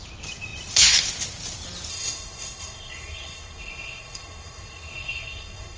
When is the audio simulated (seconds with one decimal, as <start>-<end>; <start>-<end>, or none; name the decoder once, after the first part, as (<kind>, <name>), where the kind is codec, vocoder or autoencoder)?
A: 1.9-5.8 (codec, SNAC)